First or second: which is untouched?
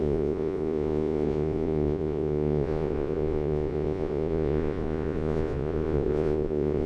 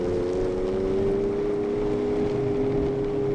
second